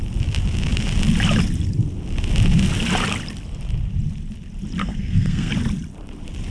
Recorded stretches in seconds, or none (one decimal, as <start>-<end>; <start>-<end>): 0.0-4.8; 5.5-6.5